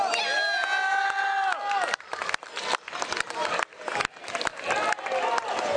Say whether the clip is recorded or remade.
recorded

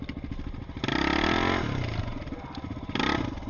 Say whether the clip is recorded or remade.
recorded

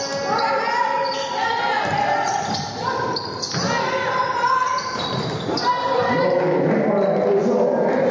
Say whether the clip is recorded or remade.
recorded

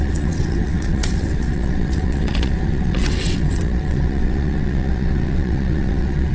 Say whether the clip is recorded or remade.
remade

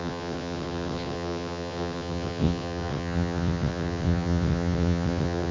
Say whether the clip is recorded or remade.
remade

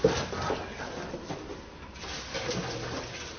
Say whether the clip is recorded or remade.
recorded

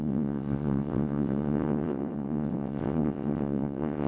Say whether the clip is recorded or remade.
remade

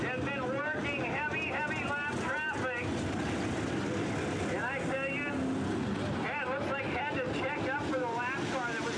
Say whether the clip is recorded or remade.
recorded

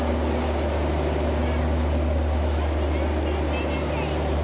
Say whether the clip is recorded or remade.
recorded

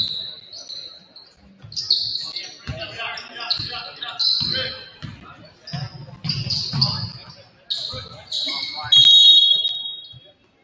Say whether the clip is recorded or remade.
recorded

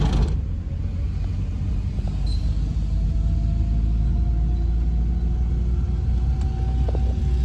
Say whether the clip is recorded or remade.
recorded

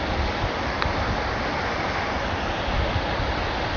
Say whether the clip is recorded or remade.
recorded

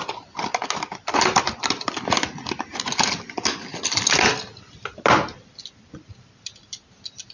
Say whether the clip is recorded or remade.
recorded